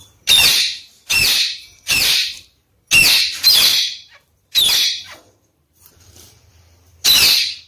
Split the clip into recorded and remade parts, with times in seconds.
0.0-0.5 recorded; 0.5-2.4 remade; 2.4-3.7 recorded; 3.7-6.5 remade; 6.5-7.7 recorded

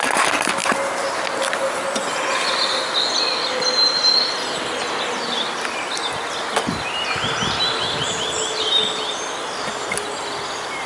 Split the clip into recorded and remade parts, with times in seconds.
0.0-10.9 recorded